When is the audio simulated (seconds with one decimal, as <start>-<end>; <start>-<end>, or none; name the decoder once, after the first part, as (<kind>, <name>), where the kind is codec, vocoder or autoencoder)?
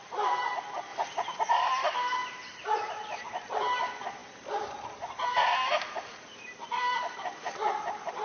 0.0-8.2 (vocoder, BigVGAN v2)